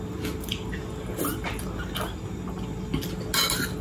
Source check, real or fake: real